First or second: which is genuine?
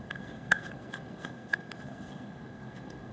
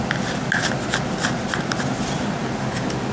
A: second